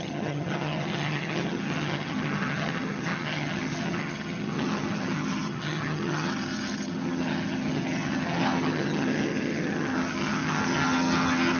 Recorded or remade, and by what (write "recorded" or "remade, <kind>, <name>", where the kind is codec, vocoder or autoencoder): remade, vocoder, HiFi-GAN